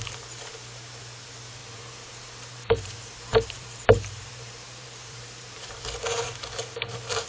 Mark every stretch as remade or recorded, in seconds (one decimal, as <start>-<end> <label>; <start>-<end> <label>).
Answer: 0.0-1.6 recorded; 1.6-5.7 remade; 5.7-7.3 recorded